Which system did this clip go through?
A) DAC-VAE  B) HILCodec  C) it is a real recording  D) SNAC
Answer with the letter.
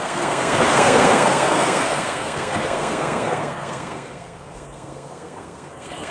D